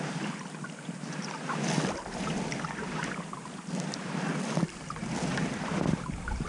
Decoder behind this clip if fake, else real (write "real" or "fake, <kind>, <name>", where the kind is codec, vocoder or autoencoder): fake, vocoder, BigVGAN v2